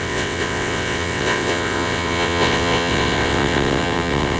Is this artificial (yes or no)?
yes